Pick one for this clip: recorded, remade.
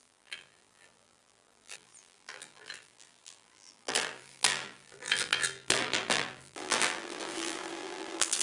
remade